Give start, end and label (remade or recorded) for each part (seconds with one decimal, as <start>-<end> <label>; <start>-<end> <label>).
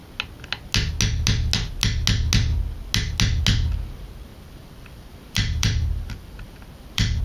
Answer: 0.0-4.3 recorded; 4.3-7.2 remade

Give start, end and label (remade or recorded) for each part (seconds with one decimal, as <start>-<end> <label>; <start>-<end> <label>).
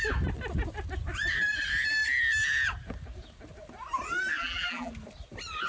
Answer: 0.0-4.4 recorded; 4.4-4.9 remade; 4.9-5.7 recorded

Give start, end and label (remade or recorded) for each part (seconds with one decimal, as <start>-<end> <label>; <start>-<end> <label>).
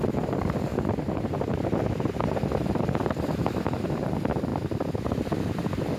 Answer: 0.0-6.0 remade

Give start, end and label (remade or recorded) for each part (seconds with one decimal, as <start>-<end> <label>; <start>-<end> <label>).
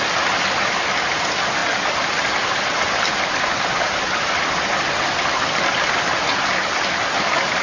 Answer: 0.0-7.6 recorded